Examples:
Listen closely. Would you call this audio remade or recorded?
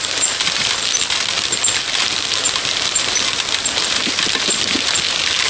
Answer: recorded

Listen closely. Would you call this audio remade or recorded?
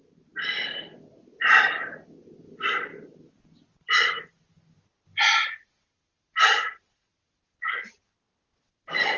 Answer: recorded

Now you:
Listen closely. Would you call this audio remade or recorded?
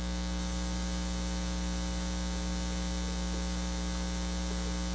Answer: recorded